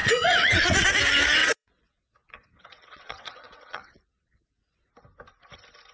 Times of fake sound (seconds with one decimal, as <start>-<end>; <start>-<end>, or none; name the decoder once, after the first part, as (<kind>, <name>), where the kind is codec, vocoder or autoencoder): 0.0-0.9 (vocoder, WaveNeXt); 1.4-4.9